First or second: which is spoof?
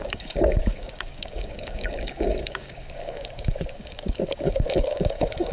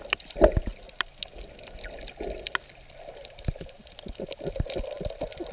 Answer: first